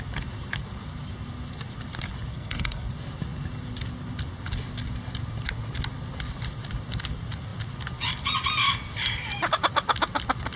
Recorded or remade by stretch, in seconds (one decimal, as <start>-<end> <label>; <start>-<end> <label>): 0.0-2.3 recorded; 2.3-2.9 remade; 2.9-10.6 recorded

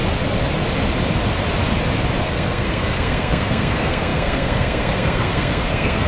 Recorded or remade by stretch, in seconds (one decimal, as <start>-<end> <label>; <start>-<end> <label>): 0.0-2.2 recorded; 2.2-6.1 remade

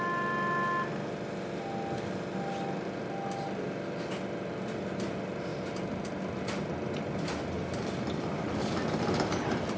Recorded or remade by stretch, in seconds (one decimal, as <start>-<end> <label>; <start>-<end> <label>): 0.0-9.8 recorded

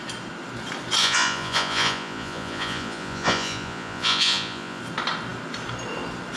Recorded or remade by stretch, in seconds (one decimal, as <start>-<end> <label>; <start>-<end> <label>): 0.0-1.0 recorded; 1.0-4.8 remade; 4.8-6.4 recorded

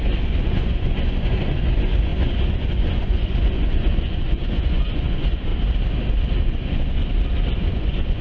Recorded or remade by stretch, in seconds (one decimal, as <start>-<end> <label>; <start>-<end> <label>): 0.0-5.5 remade; 5.5-6.4 recorded; 6.4-7.0 remade; 7.0-7.7 recorded; 7.7-8.2 remade

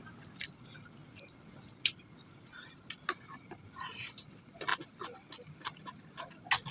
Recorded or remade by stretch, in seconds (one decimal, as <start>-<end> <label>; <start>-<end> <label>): 0.0-6.7 recorded

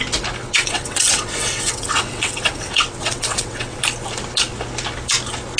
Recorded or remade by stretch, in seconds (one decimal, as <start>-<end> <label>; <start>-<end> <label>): 0.0-0.4 recorded; 0.4-3.8 remade; 3.8-5.6 recorded

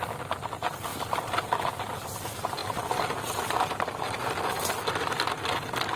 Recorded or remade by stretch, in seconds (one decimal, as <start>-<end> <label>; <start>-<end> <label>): 0.0-6.0 recorded